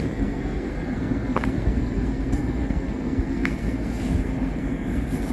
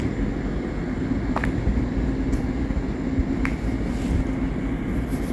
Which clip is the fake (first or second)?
first